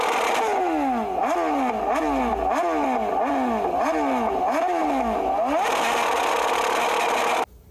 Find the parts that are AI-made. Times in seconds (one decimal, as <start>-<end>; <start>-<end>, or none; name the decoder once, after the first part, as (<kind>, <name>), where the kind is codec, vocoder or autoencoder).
none